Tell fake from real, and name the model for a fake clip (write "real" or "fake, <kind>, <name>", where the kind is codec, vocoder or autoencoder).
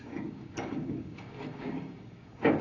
fake, codec, DAC